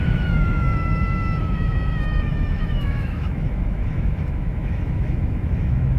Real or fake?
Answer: fake